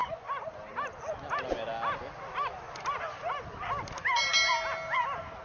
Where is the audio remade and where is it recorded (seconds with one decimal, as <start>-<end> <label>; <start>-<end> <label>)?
0.0-5.4 recorded